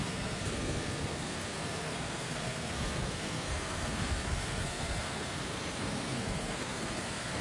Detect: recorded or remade remade